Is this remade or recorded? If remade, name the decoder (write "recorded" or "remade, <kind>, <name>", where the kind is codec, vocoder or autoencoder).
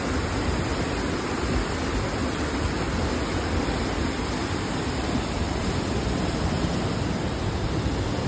recorded